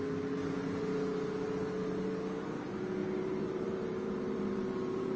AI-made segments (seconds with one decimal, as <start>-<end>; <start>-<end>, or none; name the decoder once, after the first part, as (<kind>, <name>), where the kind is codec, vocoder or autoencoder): 3.0-5.2 (vocoder, BigVGAN v2)